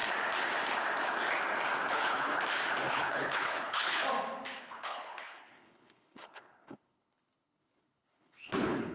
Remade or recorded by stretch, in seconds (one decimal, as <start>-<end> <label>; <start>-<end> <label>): 0.0-1.9 recorded; 1.9-2.3 remade; 2.3-2.9 recorded; 2.9-4.0 remade; 4.0-4.6 recorded; 4.6-8.9 remade